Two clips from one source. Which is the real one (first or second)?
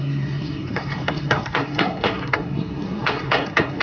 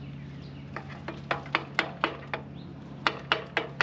second